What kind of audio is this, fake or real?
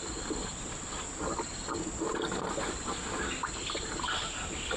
real